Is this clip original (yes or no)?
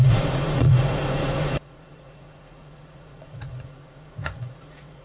no